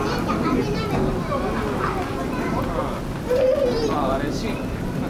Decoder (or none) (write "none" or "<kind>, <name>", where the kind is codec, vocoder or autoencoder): none